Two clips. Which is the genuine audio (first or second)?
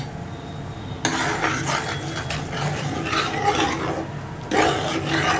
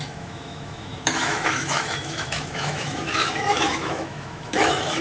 first